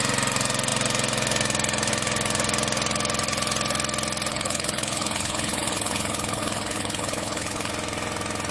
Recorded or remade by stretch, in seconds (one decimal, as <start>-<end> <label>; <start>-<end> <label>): 0.0-4.3 recorded; 4.3-7.7 remade; 7.7-8.5 recorded